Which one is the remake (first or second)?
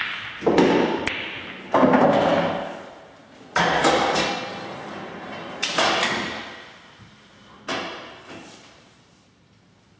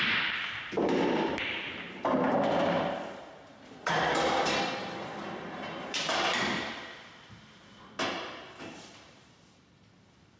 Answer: second